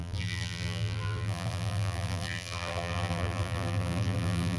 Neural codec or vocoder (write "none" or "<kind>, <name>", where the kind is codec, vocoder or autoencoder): vocoder, BigVGAN v2